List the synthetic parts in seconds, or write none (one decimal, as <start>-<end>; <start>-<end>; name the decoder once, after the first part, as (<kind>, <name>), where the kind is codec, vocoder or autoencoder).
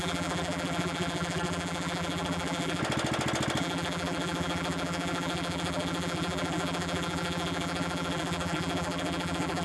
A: 0.0-2.8 (vocoder, BigVGAN v2); 3.6-9.6